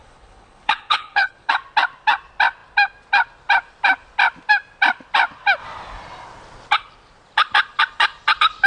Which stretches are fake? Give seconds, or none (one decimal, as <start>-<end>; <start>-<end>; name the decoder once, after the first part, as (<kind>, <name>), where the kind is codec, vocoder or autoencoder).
0.0-1.5 (codec, HILCodec)